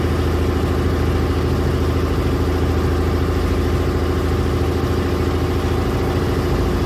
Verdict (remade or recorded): recorded